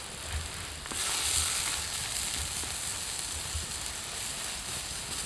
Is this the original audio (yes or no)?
yes